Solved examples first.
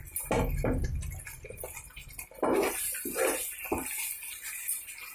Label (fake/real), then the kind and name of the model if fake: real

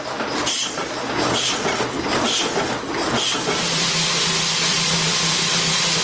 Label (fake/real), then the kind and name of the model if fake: real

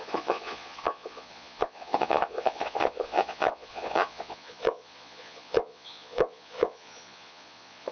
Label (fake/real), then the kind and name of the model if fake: fake, vocoder, Vocos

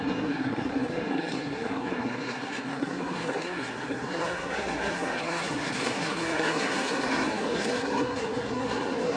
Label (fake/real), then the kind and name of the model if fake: fake, codec, SNAC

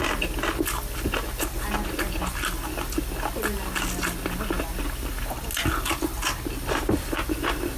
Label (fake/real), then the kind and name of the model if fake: real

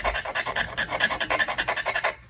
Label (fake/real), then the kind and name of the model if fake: real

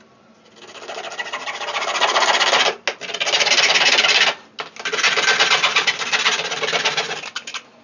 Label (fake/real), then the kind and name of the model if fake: real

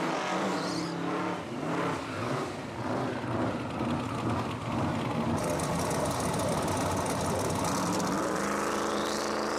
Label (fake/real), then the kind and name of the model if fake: real